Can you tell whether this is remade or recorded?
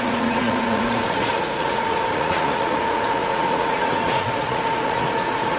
remade